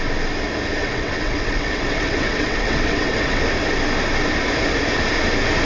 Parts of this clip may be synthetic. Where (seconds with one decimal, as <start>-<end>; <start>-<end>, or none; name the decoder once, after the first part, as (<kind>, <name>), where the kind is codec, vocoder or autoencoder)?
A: 0.8-3.4 (vocoder, WaveNeXt)